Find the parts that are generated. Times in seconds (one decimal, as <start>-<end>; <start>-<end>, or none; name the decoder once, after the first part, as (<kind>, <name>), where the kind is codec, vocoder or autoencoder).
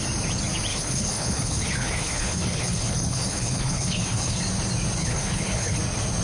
0.7-4.4 (codec, HILCodec); 5.0-5.8